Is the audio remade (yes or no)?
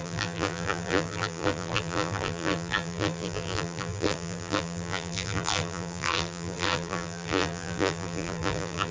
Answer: yes